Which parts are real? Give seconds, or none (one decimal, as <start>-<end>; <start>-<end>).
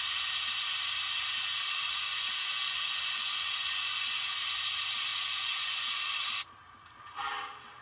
0.0-2.1; 4.4-5.1; 6.0-7.8